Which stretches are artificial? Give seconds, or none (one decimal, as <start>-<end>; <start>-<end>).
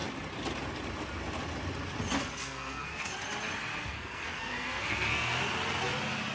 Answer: 2.2-3.1; 3.7-5.4